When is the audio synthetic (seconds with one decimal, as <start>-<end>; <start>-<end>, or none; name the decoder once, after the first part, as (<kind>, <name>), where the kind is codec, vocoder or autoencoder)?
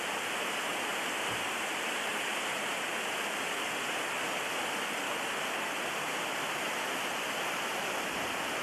none